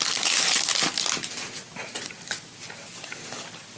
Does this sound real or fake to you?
real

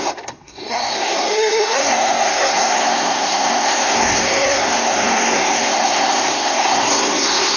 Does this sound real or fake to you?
fake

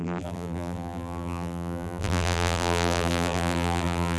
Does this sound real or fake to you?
fake